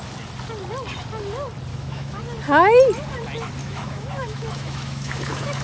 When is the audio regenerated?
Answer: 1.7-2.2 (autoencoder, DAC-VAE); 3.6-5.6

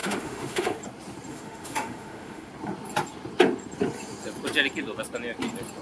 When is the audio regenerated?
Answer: 0.0-0.8 (autoencoder, DAC-VAE); 1.3-2.5